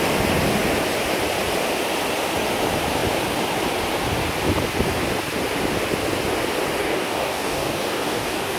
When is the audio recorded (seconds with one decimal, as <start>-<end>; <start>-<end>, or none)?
0.0-6.8